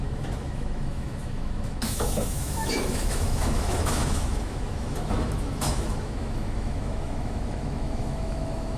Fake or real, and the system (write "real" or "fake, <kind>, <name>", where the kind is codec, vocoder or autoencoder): fake, autoencoder, DAC-VAE